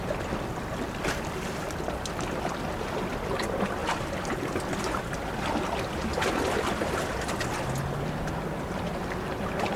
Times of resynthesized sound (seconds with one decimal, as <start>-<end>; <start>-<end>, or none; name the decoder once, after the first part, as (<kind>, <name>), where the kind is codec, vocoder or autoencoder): none